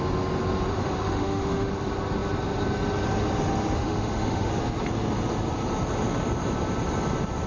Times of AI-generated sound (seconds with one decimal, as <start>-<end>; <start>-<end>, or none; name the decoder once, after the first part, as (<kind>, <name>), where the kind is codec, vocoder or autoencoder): 0.7-1.7 (autoencoder, DAC-VAE); 3.8-4.5